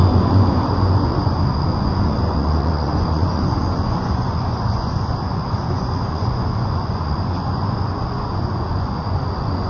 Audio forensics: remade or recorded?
remade